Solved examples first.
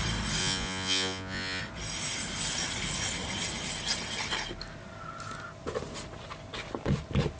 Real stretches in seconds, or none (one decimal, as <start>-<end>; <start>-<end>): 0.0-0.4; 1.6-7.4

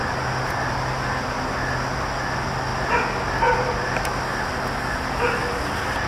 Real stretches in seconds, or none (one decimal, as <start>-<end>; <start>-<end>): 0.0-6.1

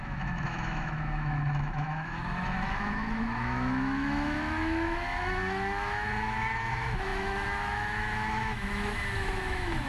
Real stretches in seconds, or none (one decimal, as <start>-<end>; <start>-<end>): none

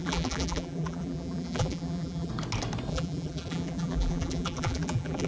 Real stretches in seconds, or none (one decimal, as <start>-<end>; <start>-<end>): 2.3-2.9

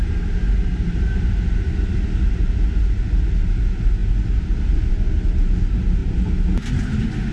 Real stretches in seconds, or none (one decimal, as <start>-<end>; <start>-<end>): 0.0-7.3

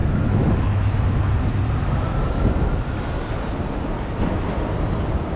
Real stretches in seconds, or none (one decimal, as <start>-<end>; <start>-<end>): 1.0-5.4

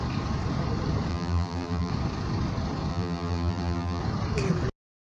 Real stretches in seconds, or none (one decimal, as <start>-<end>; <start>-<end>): 0.0-1.1; 1.9-2.9; 4.0-5.0

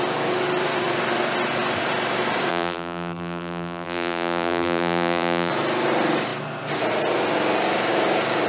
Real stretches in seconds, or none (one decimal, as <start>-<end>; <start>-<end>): 0.0-2.5; 5.5-8.5